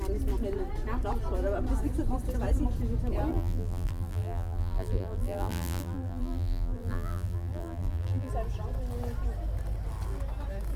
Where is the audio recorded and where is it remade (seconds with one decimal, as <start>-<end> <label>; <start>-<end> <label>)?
0.0-3.3 recorded; 3.3-8.3 remade; 8.3-10.8 recorded

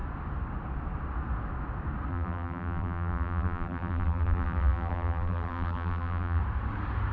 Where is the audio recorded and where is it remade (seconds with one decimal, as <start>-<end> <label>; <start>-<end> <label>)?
0.0-2.1 recorded; 2.1-6.4 remade; 6.4-7.1 recorded

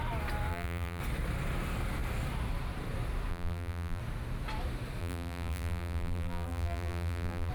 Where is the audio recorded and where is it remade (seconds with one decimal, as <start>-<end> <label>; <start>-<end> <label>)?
0.0-0.5 recorded; 0.5-1.0 remade; 1.0-3.3 recorded; 3.3-4.0 remade; 4.0-5.0 recorded; 5.0-7.5 remade